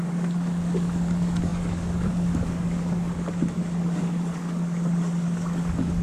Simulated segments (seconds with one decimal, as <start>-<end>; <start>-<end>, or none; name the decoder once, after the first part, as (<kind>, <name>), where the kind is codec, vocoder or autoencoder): 0.0-6.0 (codec, DAC)